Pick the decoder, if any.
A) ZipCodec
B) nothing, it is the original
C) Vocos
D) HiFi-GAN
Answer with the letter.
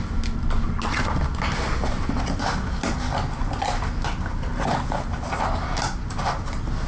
B